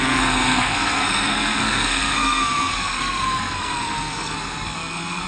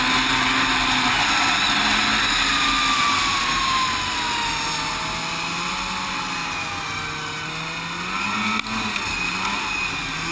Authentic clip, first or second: second